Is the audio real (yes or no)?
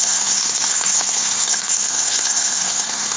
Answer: no